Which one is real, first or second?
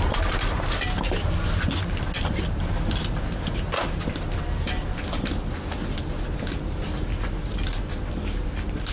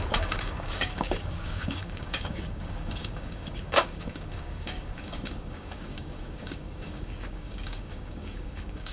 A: first